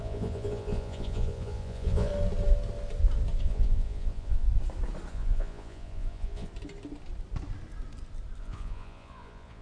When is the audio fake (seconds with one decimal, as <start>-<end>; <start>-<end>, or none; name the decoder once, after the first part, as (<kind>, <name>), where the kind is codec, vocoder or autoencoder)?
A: 0.0-2.1 (vocoder, Vocos); 3.4-4.5; 5.1-6.5; 8.4-9.6